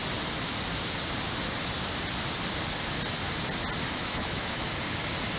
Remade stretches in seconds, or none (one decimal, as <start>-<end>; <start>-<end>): 4.0-4.7